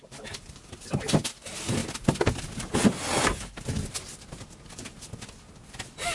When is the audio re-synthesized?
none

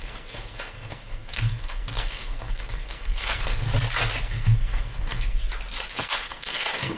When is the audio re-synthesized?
0.0-3.7 (codec, SNAC); 4.2-5.4; 5.9-7.0

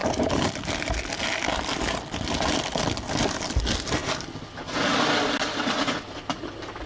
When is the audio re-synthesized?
none